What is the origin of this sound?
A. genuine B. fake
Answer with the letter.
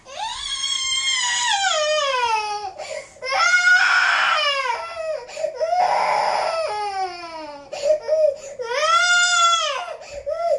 A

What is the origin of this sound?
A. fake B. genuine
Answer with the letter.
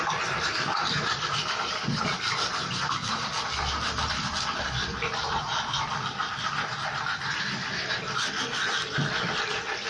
B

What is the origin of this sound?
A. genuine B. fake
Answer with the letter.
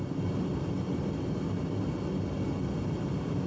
A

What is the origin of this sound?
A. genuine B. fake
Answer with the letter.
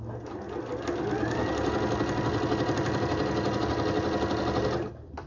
A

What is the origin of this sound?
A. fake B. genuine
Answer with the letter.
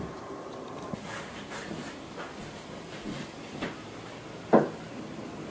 B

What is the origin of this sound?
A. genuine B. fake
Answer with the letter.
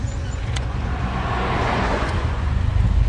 B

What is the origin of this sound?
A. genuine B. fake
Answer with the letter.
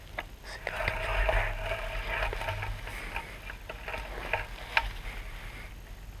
A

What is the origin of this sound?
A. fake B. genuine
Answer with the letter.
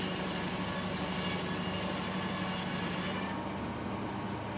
B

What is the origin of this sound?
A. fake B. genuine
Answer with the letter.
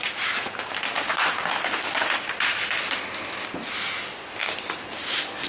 B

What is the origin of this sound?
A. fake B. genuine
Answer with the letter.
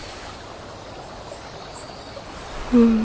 B